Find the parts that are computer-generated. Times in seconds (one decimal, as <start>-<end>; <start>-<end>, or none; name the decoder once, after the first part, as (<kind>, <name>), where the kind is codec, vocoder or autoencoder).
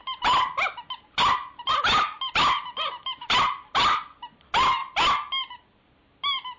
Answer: none